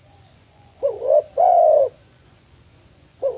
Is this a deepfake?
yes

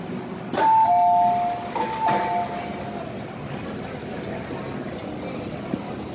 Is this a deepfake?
no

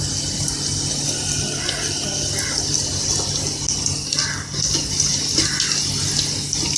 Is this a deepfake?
no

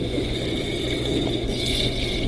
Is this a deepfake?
yes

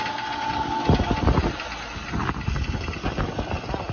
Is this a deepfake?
no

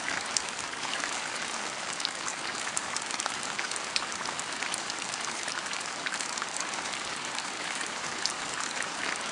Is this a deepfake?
yes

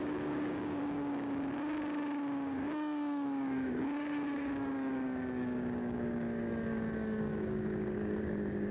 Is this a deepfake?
yes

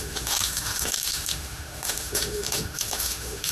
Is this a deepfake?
yes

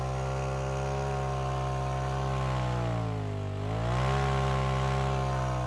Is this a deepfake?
no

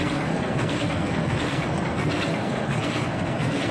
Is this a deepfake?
yes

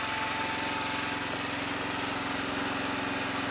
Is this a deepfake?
no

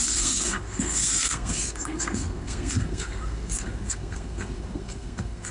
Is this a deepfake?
yes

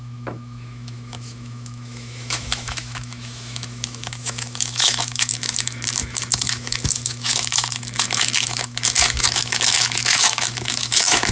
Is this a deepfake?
yes